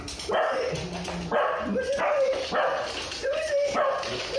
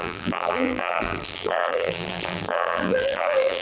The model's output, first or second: second